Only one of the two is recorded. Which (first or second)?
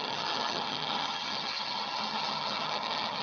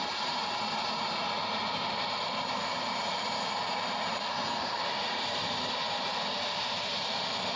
second